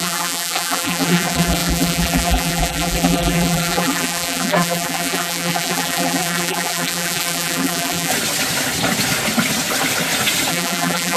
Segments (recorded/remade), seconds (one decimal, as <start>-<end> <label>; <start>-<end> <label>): 0.0-8.1 remade; 8.1-10.5 recorded; 10.5-11.2 remade